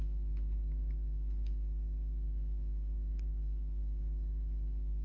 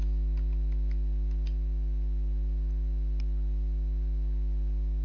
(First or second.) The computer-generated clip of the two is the first